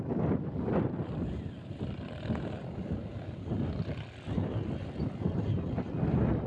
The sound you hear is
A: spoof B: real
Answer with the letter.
B